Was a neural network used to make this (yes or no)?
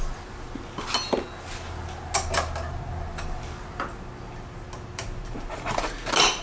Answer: no